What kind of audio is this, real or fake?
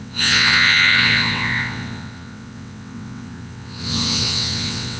fake